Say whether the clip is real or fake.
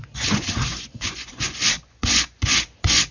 fake